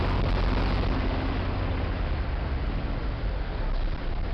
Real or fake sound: real